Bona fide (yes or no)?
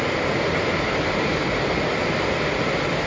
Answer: yes